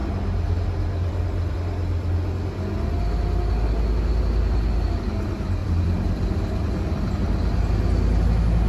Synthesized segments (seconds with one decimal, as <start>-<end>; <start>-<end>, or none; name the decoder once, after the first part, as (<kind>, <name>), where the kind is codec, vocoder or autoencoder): 5.6-7.1 (vocoder, BigVGAN v2)